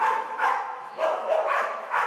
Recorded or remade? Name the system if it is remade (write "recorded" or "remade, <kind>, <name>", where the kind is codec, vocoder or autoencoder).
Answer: remade, autoencoder, DAC-VAE